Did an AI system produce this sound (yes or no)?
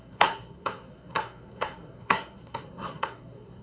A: yes